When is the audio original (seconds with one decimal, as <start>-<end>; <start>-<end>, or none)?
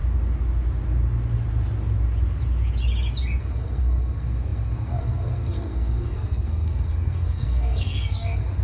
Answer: 0.0-3.4